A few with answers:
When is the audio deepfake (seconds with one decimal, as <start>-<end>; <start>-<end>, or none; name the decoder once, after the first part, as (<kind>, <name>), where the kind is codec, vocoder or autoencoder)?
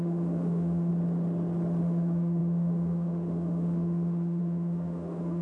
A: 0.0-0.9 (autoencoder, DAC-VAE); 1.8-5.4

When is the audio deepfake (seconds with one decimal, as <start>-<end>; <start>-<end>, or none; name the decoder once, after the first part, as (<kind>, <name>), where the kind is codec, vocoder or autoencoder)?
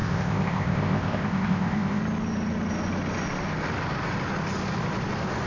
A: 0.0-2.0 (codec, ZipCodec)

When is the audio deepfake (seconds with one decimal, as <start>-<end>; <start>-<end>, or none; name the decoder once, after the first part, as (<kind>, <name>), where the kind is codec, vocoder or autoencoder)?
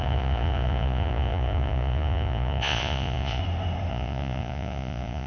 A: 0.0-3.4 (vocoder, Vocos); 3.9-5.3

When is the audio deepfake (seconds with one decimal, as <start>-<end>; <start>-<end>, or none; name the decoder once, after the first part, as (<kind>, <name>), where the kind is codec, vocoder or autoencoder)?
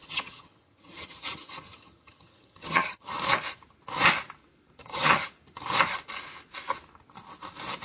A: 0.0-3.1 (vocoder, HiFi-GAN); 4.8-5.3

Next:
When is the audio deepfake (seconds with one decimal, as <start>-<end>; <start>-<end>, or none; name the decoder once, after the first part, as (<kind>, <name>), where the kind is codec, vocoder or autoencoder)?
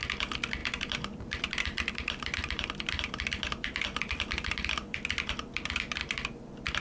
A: 0.6-4.7 (vocoder, BigVGAN v2); 6.0-6.8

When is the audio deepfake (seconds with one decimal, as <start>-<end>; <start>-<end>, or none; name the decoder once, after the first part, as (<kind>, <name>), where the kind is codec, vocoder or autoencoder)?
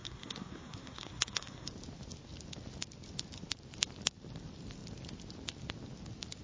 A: 0.0-1.7 (codec, SNAC)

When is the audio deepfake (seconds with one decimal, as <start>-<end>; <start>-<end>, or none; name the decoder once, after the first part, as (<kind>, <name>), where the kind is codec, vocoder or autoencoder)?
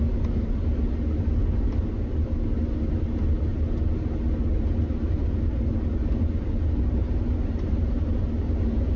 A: none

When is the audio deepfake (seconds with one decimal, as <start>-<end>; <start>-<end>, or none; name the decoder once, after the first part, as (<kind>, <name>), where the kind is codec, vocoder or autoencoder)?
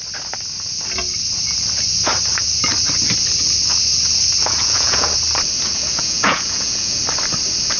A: 4.4-5.1 (vocoder, Vocos); 5.7-7.0